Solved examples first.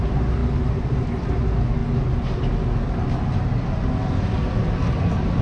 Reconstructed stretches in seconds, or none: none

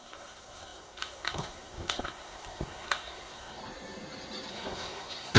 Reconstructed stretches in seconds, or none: 0.0-3.6 (codec, SNAC); 4.5-5.4

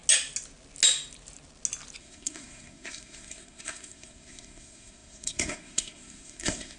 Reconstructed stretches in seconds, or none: 2.0-6.8 (codec, SNAC)

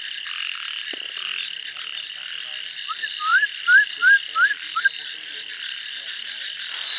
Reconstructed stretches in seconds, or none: none

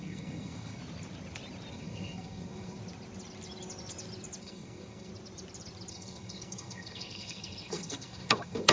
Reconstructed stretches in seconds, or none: 0.0-0.8 (codec, SNAC); 1.7-2.8; 4.4-5.1; 5.9-8.7